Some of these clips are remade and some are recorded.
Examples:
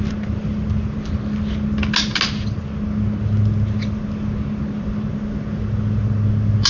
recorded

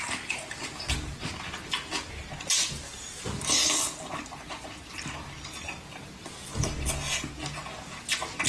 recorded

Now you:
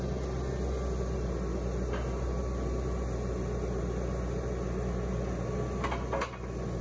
recorded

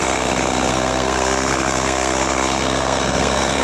remade